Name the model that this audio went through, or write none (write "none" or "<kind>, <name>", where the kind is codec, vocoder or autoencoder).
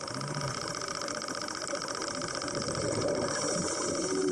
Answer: none